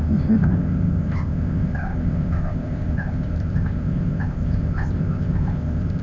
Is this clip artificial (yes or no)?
yes